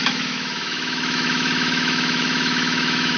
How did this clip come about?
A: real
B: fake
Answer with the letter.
B